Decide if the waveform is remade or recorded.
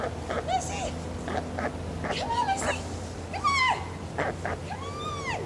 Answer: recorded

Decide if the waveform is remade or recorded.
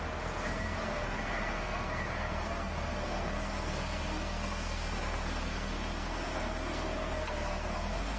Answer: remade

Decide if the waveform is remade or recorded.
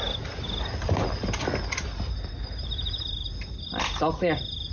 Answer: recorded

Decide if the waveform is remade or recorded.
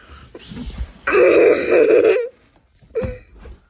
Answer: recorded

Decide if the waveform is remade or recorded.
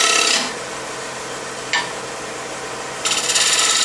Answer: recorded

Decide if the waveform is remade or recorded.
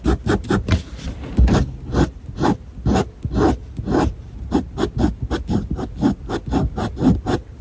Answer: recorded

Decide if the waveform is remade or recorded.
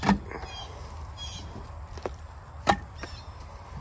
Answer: recorded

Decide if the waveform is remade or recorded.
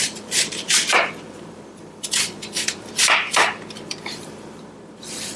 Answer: remade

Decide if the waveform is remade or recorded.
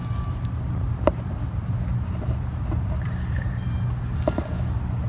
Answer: recorded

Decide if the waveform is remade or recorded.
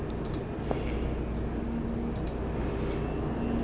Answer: recorded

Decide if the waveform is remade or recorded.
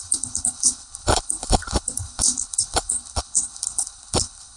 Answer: remade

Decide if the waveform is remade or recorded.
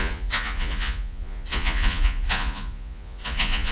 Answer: remade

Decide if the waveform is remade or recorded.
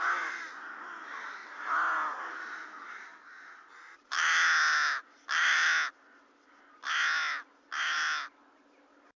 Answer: recorded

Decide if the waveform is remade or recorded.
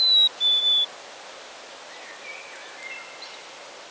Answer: recorded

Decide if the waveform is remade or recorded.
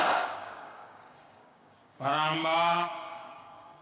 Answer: remade